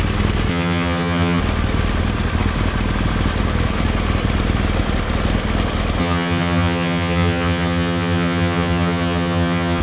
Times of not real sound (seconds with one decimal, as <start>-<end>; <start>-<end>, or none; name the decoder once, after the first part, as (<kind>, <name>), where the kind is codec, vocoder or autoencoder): 0.5-1.4 (vocoder, HiFi-GAN); 6.0-9.8